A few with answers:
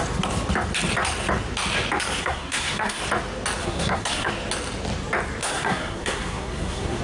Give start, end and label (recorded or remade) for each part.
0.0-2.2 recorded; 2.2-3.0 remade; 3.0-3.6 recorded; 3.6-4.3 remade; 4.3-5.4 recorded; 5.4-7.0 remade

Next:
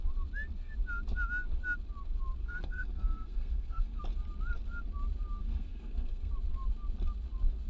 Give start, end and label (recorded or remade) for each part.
0.0-2.4 recorded; 2.4-4.0 remade; 4.0-5.4 recorded; 5.4-6.3 remade; 6.3-7.7 recorded